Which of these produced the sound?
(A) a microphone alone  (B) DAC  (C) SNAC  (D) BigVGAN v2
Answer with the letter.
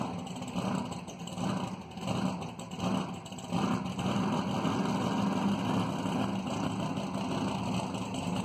A